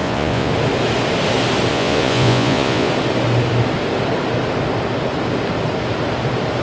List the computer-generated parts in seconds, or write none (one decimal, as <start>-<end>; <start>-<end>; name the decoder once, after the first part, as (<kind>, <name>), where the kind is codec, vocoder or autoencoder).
0.0-0.5 (vocoder, Vocos); 1.7-2.9